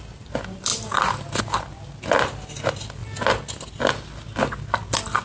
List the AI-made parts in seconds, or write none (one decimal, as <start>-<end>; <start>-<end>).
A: none